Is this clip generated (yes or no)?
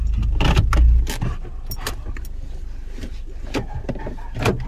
no